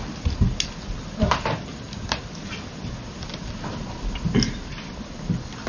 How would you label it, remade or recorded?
recorded